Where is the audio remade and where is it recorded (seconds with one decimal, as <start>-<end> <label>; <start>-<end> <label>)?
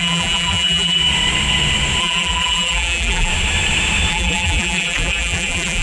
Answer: 0.0-1.0 remade; 1.0-2.0 recorded; 2.0-3.3 remade; 3.3-4.1 recorded; 4.1-5.8 remade